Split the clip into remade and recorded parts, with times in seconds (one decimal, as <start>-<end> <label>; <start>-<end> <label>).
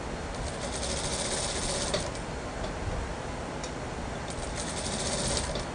0.0-5.7 recorded